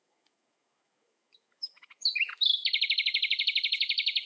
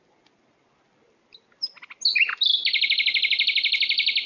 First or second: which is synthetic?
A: first